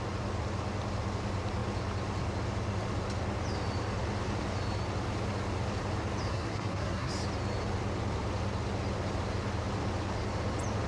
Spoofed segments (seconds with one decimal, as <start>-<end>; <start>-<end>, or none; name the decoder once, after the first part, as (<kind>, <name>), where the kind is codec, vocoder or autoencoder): 6.3-7.1 (codec, SNAC)

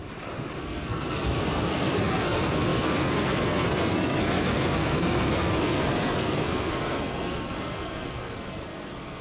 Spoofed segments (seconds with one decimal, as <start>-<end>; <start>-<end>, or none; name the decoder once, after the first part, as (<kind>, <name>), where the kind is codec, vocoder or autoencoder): 0.6-9.2 (codec, SNAC)

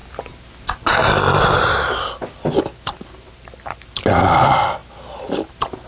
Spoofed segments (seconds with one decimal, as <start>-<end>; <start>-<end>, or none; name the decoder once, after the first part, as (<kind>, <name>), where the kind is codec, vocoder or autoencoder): none

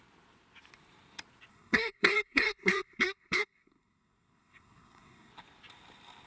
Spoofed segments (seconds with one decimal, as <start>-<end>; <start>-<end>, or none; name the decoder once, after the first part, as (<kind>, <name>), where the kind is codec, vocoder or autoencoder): 1.5-5.3 (codec, SNAC)

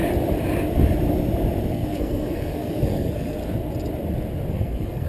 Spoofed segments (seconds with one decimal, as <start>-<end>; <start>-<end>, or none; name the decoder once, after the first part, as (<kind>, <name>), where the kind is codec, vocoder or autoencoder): 1.7-3.4 (codec, SNAC); 4.5-5.1

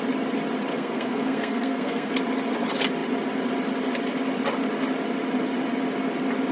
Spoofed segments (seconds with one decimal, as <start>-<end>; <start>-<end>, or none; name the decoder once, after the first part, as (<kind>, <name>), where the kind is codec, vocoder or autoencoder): 0.7-2.1 (codec, SNAC)

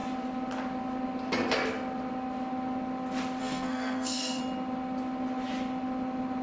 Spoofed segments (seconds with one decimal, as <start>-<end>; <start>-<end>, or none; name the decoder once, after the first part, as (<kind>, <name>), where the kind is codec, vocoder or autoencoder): 3.4-4.4 (codec, SNAC)